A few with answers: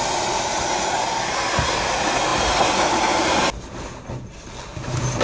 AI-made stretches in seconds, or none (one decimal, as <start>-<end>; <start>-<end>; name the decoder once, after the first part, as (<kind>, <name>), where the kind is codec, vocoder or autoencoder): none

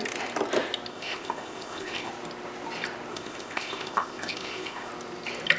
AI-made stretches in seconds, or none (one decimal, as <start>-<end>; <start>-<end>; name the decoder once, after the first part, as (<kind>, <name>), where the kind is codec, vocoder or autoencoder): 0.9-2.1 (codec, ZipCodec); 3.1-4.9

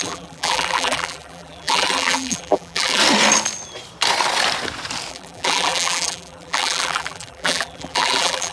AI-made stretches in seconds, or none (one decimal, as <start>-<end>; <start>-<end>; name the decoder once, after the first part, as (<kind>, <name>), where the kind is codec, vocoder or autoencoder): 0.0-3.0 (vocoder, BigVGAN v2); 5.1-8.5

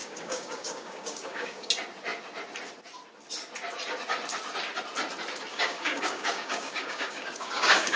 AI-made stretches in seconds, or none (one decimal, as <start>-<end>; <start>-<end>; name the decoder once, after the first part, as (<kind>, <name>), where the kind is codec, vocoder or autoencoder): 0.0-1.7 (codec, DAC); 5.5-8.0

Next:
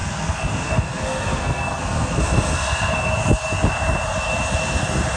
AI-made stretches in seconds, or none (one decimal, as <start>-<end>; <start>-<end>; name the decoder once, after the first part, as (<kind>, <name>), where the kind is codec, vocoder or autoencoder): 0.0-3.1 (codec, SNAC)